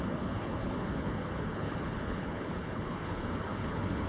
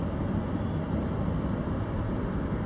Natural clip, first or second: second